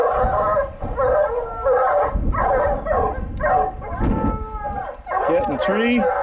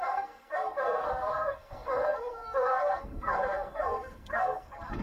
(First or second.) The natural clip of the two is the first